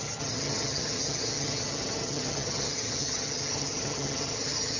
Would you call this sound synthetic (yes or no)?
yes